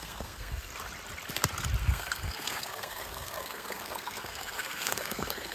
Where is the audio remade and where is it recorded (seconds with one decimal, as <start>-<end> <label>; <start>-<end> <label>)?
0.0-0.7 remade; 0.7-1.8 recorded; 1.8-5.5 remade

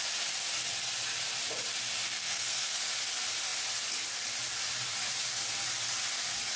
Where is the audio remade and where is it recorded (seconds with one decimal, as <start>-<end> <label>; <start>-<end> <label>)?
0.0-2.1 recorded; 2.1-2.8 remade; 2.8-6.6 recorded

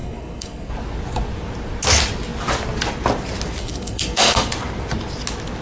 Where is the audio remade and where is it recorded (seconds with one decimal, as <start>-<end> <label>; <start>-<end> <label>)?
0.0-0.7 remade; 0.7-3.6 recorded; 3.6-4.5 remade; 4.5-5.6 recorded

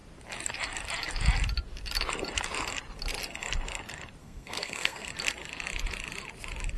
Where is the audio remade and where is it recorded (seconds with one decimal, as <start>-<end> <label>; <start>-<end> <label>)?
0.0-4.2 recorded; 4.2-5.1 remade; 5.1-6.8 recorded

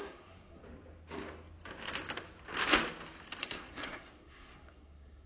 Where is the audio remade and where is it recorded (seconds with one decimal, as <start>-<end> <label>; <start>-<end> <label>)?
0.0-0.6 remade; 0.6-3.4 recorded; 3.4-5.3 remade

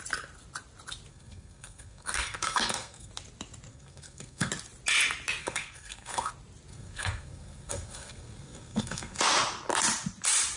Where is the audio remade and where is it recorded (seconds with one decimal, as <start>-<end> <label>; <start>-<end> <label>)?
0.0-1.1 recorded; 1.1-3.1 remade; 3.1-3.7 recorded; 3.7-4.5 remade; 4.5-5.4 recorded; 5.4-6.3 remade; 6.3-6.7 recorded; 6.7-9.2 remade; 9.2-10.6 recorded

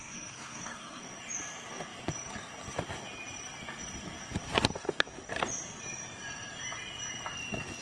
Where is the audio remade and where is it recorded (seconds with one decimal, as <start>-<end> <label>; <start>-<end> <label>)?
0.0-1.0 remade; 1.0-7.8 recorded

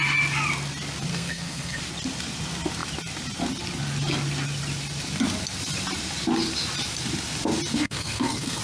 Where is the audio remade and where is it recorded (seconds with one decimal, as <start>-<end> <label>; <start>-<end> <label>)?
0.0-1.1 recorded; 1.1-1.8 remade; 1.8-7.7 recorded; 7.7-8.6 remade